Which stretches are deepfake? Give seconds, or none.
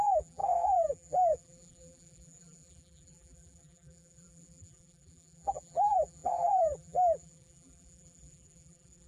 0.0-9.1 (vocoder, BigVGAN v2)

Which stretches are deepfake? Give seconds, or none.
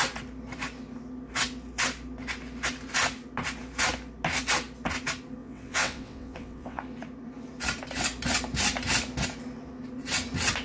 5.4-6.8 (vocoder, WaveNeXt)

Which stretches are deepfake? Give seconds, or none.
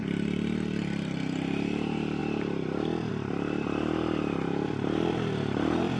0.0-2.2 (vocoder, BigVGAN v2); 3.1-6.0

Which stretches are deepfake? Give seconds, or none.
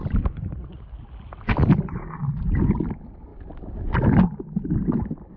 none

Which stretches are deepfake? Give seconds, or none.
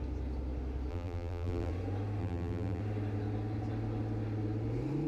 0.9-1.7 (vocoder, BigVGAN v2); 2.2-2.8